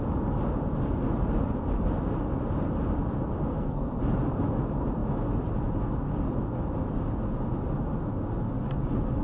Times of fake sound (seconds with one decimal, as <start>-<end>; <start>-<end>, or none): 3.5-4.0